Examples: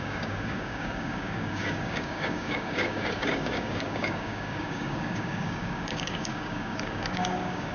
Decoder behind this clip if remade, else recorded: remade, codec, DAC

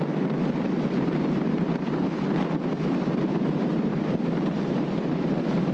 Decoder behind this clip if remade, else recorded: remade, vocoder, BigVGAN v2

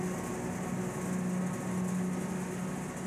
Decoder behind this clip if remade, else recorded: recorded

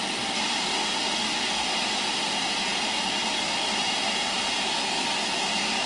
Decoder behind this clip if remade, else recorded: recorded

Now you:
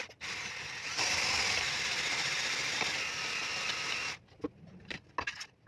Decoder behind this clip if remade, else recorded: recorded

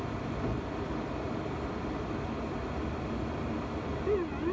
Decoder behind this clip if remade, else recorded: recorded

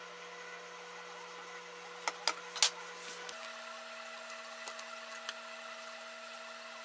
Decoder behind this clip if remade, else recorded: recorded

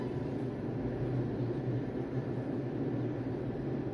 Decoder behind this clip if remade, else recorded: recorded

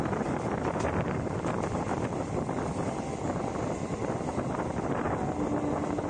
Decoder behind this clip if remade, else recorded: recorded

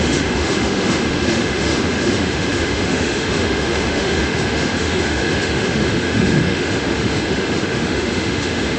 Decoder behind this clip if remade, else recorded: remade, autoencoder, DAC-VAE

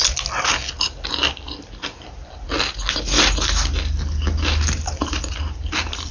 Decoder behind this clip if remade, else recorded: recorded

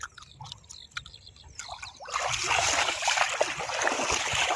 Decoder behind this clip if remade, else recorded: recorded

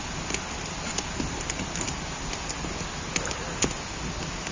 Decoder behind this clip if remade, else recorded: recorded